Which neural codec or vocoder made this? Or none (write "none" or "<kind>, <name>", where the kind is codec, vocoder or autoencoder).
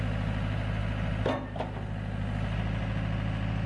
none